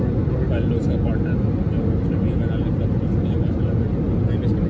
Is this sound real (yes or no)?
yes